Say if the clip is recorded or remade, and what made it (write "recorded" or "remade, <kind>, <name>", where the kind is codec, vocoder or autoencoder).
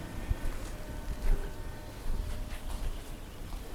recorded